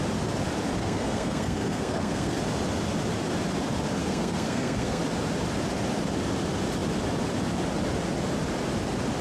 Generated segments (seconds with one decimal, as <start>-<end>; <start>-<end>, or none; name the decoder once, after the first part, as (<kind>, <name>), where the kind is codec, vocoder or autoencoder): 0.8-2.4 (codec, SNAC); 4.0-5.0